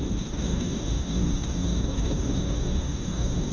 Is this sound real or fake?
fake